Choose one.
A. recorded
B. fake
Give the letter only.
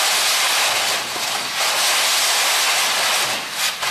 A